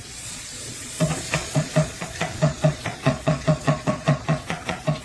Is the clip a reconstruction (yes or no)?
yes